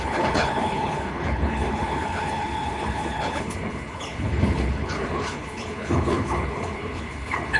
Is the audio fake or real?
fake